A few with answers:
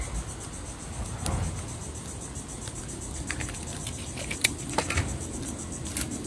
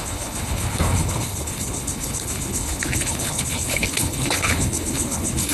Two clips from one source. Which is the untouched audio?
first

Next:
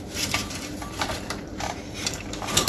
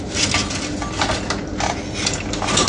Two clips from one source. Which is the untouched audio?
second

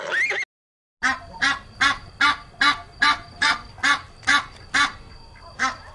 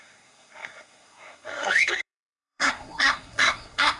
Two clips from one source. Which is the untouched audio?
first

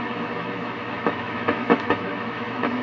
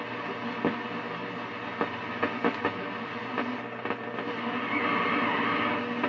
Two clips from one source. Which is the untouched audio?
second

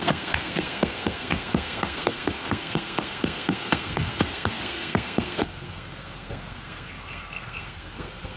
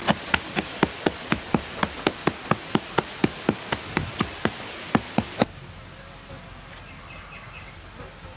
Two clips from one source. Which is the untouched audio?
second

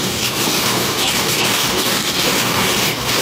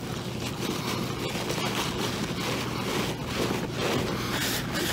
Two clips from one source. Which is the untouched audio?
second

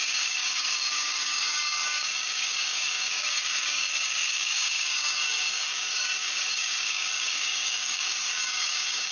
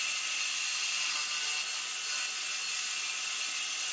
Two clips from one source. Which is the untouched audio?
second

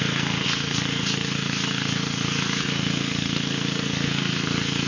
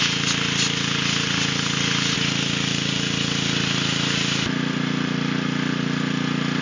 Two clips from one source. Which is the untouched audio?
second